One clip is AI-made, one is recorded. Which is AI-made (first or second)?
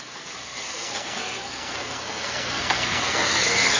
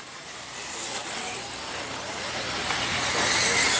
first